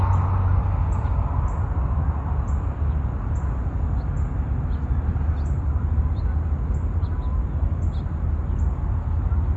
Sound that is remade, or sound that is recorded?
recorded